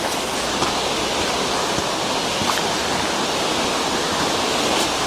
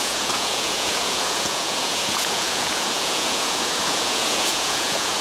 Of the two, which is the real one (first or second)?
first